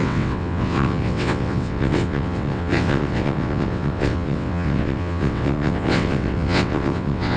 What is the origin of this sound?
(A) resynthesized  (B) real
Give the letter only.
A